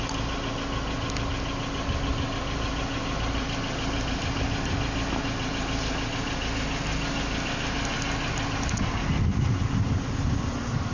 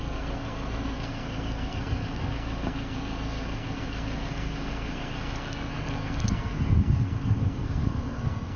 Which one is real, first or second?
first